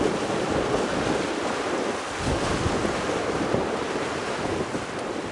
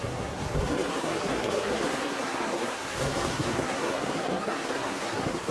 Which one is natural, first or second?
first